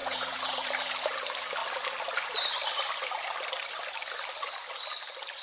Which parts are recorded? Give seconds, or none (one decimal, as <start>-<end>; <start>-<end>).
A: 0.7-5.4